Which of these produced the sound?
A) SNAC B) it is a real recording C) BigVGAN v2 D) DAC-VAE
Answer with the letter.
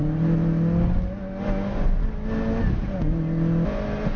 B